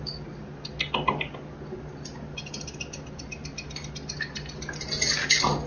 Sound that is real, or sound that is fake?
real